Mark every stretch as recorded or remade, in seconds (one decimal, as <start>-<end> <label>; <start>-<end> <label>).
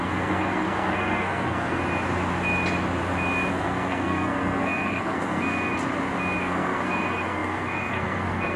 0.0-1.8 remade; 1.8-3.5 recorded; 3.5-5.7 remade; 5.7-6.4 recorded; 6.4-8.6 remade